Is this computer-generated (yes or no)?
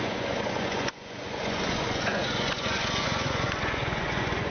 yes